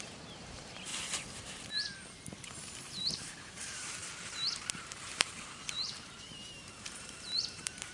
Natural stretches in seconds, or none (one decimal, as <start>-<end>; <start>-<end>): 0.9-2.5; 4.0-5.1